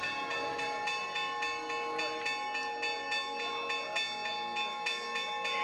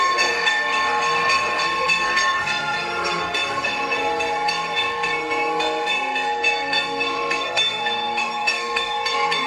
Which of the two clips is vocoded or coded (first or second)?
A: second